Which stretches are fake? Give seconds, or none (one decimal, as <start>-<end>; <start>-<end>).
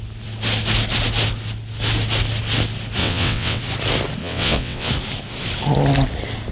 3.0-3.6; 4.2-4.9